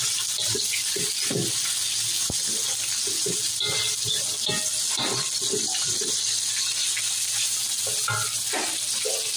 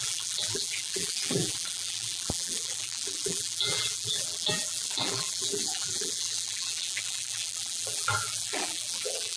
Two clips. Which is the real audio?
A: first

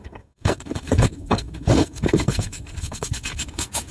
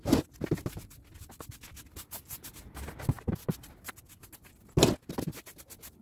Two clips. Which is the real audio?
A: second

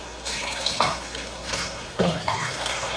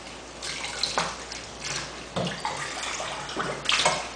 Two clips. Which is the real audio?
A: second